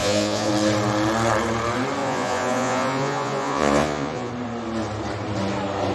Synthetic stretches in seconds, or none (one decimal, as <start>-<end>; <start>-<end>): 0.0-0.5; 2.0-4.3